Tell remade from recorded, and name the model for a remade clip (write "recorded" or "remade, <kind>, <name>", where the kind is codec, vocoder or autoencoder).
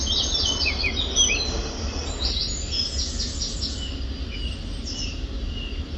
recorded